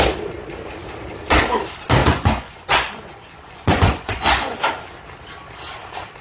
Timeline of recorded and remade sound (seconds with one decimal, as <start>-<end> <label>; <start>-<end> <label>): 0.0-2.0 recorded; 2.0-4.7 remade; 4.7-6.2 recorded